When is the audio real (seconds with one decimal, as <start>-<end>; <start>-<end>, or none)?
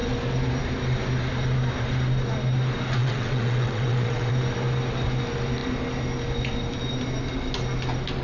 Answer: 0.0-3.0; 4.3-8.2